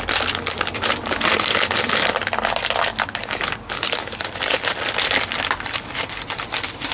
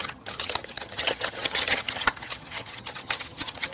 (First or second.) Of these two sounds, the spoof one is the second